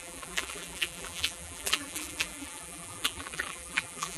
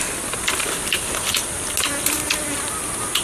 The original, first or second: second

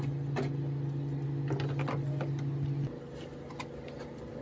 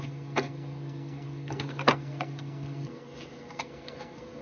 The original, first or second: first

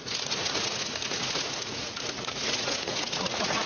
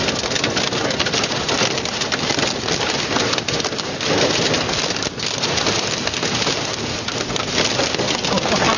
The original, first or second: second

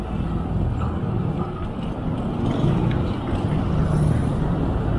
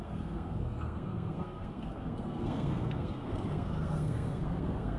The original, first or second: first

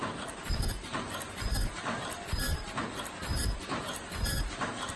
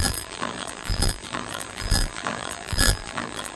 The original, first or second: first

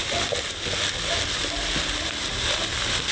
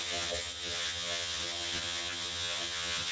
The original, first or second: first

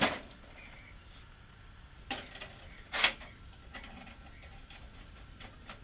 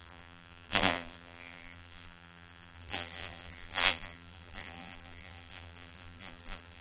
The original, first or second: first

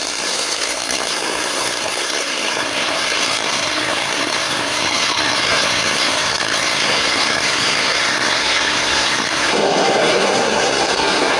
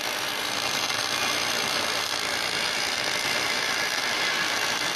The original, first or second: second